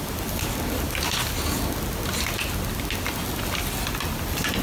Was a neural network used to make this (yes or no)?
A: no